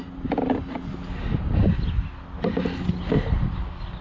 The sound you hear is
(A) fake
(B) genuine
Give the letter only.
B